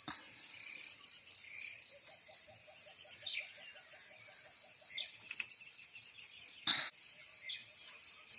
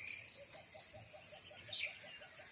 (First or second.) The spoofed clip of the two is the first